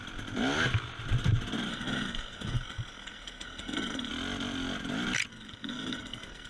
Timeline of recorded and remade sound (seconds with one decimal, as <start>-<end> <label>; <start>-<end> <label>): 0.0-1.7 recorded; 1.7-4.1 remade; 4.1-5.3 recorded; 5.3-6.5 remade